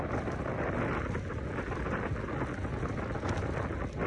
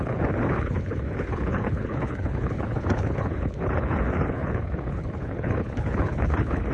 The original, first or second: first